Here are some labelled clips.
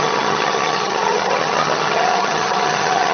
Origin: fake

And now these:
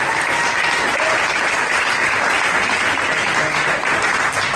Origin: real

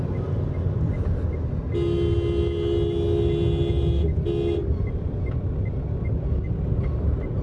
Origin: real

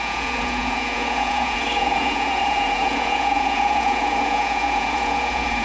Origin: fake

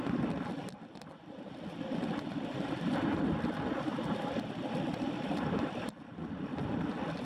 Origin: real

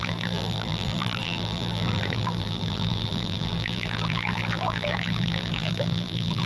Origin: fake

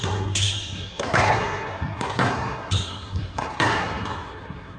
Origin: fake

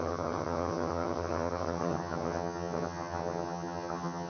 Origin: fake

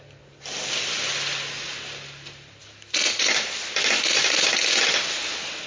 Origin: real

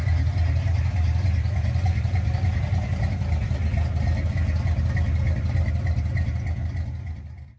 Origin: real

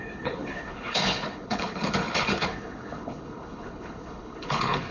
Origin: fake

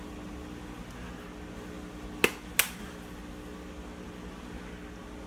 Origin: real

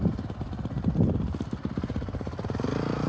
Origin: real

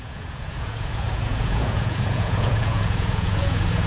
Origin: fake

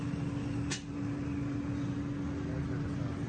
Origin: real